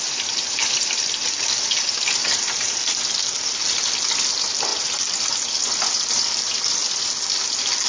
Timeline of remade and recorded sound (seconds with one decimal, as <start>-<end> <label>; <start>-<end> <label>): 0.0-7.9 recorded